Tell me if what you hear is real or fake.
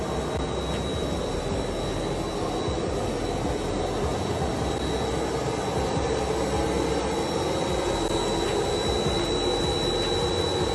real